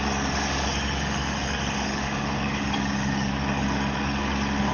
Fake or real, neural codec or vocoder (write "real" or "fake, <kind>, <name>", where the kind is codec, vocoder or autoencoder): fake, codec, DAC